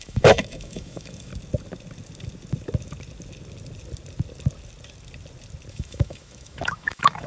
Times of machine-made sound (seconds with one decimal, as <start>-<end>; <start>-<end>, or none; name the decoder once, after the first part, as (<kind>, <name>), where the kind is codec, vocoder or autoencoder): 0.0-1.3 (autoencoder, DAC-VAE); 5.7-7.3